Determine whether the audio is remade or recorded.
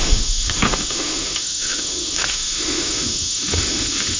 remade